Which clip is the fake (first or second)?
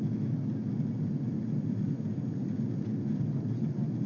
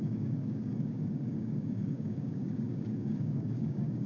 second